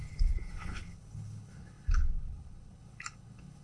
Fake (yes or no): yes